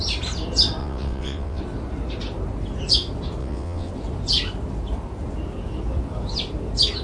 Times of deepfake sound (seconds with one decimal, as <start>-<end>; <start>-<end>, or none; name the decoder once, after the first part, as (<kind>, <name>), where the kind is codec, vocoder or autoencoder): 0.8-1.6 (vocoder, WaveNeXt); 3.4-3.9